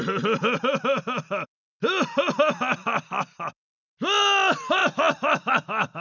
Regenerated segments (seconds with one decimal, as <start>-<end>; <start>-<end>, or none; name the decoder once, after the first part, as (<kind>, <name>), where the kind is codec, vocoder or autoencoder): none